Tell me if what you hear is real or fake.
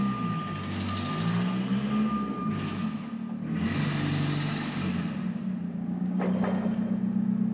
real